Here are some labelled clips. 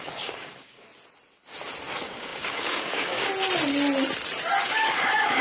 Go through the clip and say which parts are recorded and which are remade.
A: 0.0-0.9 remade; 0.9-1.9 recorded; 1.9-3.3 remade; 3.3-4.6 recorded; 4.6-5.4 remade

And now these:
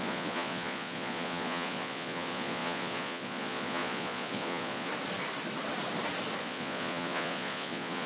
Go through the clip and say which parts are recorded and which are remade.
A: 0.0-4.9 remade; 4.9-6.4 recorded; 6.4-8.1 remade

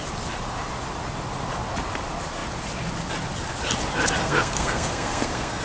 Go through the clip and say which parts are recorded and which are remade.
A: 0.0-4.2 recorded; 4.2-5.6 remade

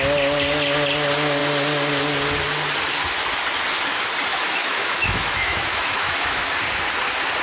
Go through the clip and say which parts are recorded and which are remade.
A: 0.0-4.3 recorded; 4.3-6.5 remade; 6.5-7.4 recorded